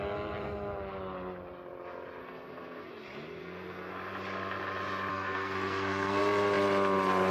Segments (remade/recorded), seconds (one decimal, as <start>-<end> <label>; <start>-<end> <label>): 0.0-2.2 recorded; 2.2-2.9 remade; 2.9-3.4 recorded; 3.4-3.9 remade; 3.9-5.1 recorded; 5.1-6.2 remade; 6.2-7.3 recorded